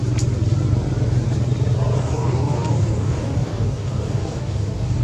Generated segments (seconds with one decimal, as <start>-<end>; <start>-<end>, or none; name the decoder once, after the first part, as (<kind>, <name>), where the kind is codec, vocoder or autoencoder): 2.0-5.0 (codec, DAC)